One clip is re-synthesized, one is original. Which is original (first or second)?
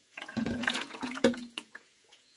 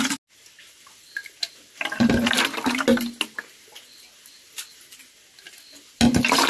second